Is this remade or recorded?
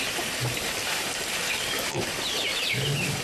recorded